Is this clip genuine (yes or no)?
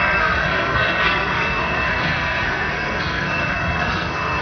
no